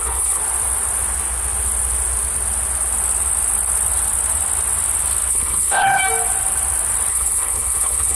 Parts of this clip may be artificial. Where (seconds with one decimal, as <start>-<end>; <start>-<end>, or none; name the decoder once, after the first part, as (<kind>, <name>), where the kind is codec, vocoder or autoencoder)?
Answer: 0.0-0.4 (codec, HILCodec); 5.3-6.0; 7.1-8.2